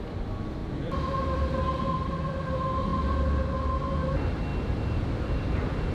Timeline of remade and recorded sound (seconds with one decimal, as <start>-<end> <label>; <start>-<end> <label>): 0.0-2.9 remade; 2.9-4.1 recorded; 4.1-4.5 remade; 4.5-5.0 recorded; 5.0-5.9 remade